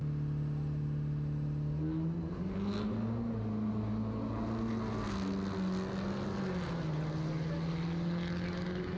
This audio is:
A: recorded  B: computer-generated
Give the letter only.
A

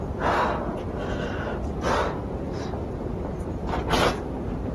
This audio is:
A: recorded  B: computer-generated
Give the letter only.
A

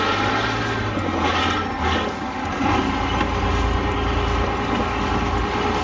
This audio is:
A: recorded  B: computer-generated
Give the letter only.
A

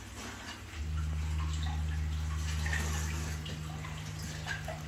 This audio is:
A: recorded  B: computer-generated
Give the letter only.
A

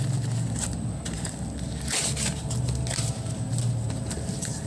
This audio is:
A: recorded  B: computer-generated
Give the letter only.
A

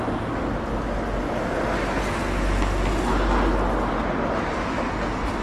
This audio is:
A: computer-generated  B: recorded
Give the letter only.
B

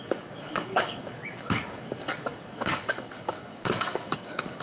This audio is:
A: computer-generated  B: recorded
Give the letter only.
A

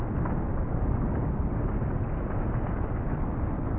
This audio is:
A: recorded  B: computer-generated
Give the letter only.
A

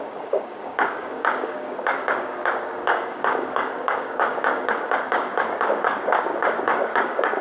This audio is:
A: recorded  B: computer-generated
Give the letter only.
B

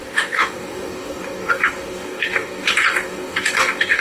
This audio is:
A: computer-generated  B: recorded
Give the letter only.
A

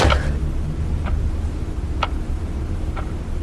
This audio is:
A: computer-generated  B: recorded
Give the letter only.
B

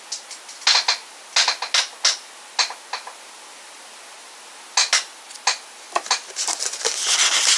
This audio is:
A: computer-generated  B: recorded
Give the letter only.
B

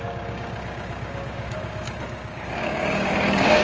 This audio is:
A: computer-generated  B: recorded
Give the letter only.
A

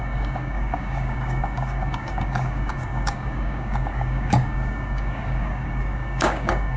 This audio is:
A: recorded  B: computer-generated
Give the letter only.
B